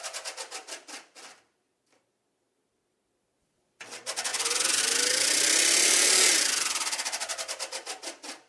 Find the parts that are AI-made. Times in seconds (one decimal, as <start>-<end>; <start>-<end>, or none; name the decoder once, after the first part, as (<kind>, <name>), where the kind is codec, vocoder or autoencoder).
4.3-4.8 (vocoder, Vocos)